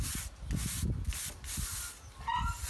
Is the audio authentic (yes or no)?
yes